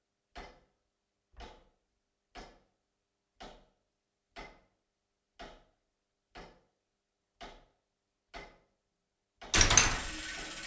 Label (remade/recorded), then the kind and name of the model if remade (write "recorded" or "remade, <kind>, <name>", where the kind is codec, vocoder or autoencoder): recorded